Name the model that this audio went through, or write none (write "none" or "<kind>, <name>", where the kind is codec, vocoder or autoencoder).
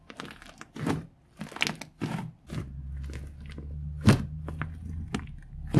none